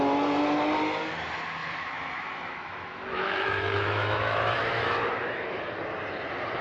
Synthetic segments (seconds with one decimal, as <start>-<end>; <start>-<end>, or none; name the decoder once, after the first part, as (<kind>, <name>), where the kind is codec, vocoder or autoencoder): 1.6-5.6 (autoencoder, DAC-VAE)

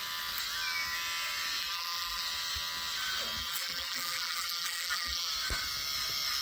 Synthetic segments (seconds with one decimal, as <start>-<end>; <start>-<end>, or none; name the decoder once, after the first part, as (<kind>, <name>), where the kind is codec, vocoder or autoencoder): 1.6-2.2 (vocoder, BigVGAN v2); 3.4-5.3

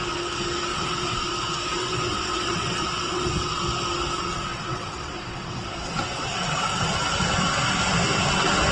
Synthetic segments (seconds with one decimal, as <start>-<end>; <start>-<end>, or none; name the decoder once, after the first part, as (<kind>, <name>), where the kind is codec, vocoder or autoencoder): 0.7-1.2 (vocoder, WaveNeXt); 1.8-3.6; 4.5-6.9